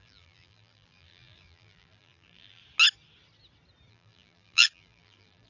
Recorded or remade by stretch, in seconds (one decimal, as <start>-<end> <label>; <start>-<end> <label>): 0.0-2.6 remade; 2.6-3.9 recorded; 3.9-5.5 remade